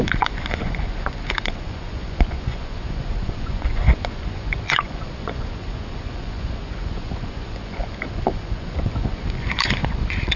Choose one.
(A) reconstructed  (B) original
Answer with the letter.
A